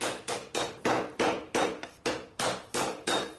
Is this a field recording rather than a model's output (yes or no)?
no